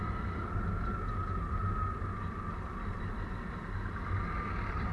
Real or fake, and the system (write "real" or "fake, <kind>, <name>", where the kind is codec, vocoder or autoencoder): real